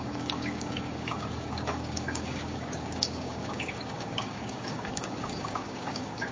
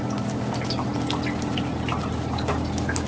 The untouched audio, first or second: second